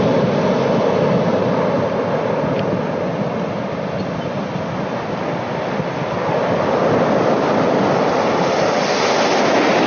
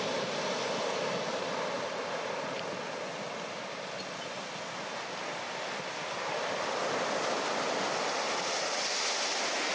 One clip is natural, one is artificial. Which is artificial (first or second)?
second